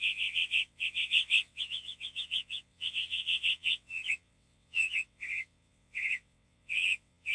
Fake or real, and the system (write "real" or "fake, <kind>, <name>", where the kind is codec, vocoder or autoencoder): fake, vocoder, WaveNeXt